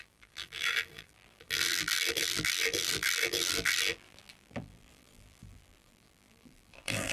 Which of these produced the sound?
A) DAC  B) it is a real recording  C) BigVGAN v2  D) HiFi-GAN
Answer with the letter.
C